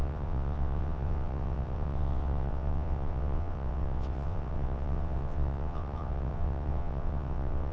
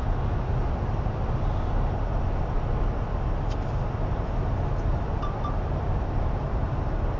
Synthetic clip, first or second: first